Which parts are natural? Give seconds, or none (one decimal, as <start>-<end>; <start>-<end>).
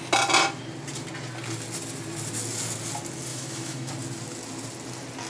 0.0-3.3; 3.9-5.3